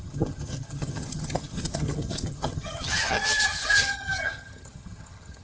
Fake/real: fake